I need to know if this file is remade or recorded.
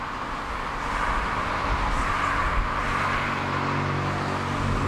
recorded